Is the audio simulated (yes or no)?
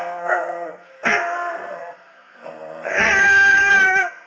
yes